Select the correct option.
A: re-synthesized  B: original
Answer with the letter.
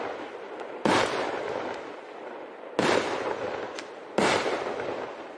B